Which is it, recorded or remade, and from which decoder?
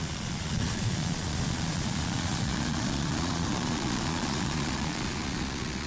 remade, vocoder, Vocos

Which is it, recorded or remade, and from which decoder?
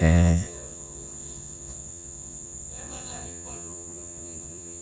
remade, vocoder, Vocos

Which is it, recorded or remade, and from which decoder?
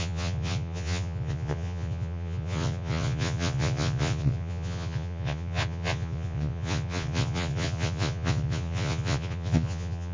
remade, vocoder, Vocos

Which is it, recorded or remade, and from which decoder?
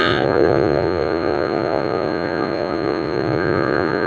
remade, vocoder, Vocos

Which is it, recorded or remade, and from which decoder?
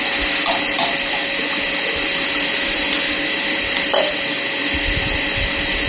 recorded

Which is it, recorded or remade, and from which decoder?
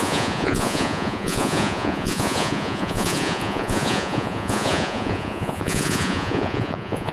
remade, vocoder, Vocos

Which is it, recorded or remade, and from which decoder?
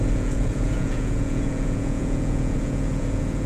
remade, vocoder, Vocos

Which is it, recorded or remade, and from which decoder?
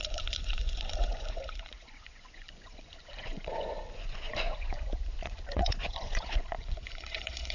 remade, vocoder, Vocos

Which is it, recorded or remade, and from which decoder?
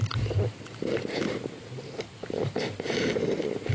recorded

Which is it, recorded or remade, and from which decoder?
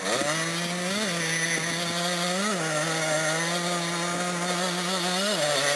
recorded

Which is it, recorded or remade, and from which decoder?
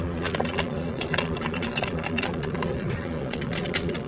remade, vocoder, Vocos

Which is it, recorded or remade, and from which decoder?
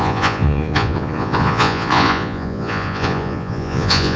remade, vocoder, Vocos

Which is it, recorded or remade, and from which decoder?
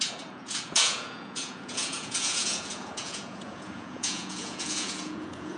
remade, vocoder, Vocos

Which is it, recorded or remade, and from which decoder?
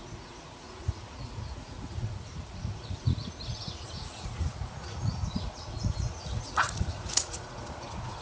remade, vocoder, Vocos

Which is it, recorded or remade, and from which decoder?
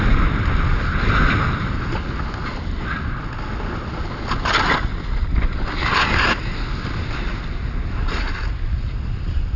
recorded